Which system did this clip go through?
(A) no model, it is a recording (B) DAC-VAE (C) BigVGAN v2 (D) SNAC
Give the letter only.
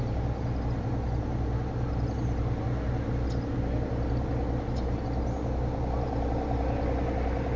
A